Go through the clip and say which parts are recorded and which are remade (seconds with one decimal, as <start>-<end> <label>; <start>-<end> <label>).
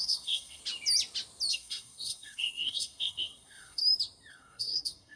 0.0-0.6 remade; 0.6-1.5 recorded; 1.5-3.8 remade; 3.8-4.3 recorded; 4.3-5.2 remade